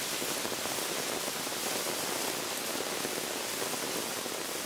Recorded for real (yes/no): yes